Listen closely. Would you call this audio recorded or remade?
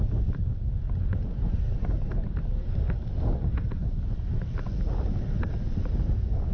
recorded